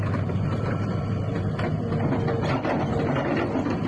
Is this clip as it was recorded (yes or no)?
no